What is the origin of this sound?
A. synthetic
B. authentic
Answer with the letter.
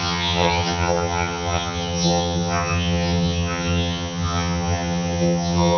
A